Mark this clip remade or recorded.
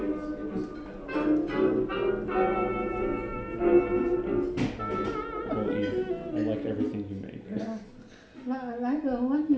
recorded